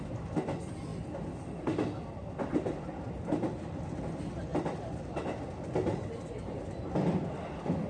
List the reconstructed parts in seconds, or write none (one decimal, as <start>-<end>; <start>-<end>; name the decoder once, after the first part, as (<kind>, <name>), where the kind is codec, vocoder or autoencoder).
none